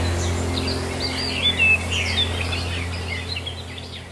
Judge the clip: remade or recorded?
recorded